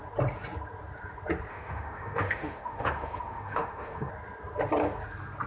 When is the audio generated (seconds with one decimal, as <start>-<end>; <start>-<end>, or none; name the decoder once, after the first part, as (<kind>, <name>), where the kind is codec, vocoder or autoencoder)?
1.5-4.1 (autoencoder, DAC-VAE)